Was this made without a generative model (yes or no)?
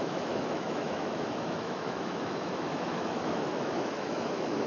no